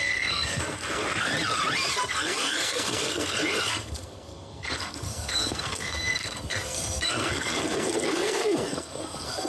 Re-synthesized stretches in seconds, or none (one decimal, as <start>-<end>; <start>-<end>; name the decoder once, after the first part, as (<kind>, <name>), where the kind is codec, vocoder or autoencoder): 0.0-1.3 (codec, SNAC); 2.1-9.5